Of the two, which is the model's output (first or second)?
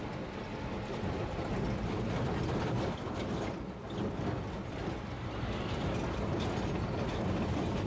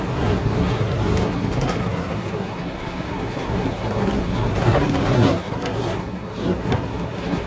second